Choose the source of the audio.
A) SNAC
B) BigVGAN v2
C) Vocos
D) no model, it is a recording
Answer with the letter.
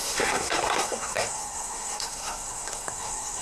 A